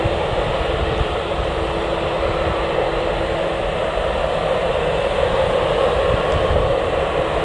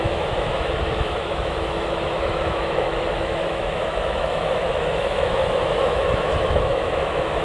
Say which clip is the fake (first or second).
second